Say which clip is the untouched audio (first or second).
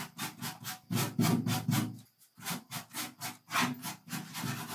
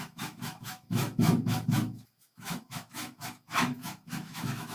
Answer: first